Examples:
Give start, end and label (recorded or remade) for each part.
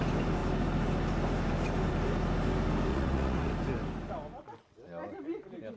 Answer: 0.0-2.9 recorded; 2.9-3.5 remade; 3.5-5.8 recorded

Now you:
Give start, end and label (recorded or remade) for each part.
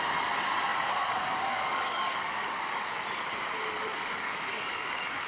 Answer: 0.0-0.7 recorded; 0.7-2.9 remade; 2.9-3.9 recorded; 3.9-5.3 remade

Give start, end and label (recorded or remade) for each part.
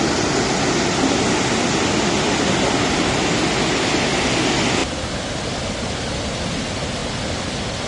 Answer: 0.0-7.9 recorded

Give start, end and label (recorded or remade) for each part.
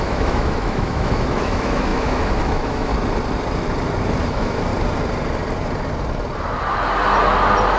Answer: 0.0-2.9 remade; 2.9-4.3 recorded; 4.3-4.7 remade; 4.7-7.8 recorded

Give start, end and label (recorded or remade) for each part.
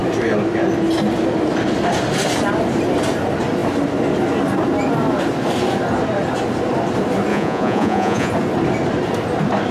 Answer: 0.0-7.3 recorded; 7.3-8.3 remade; 8.3-9.7 recorded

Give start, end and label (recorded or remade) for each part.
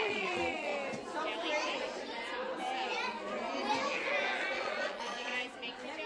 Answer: 0.0-0.7 remade; 0.7-4.4 recorded; 4.4-5.3 remade; 5.3-6.1 recorded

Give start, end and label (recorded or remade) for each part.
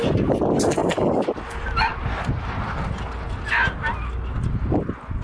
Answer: 0.0-5.2 recorded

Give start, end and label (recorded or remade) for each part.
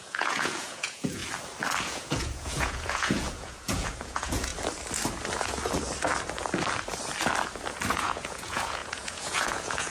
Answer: 0.0-1.2 remade; 1.2-1.8 recorded; 1.8-4.5 remade; 4.5-7.9 recorded; 7.9-9.9 remade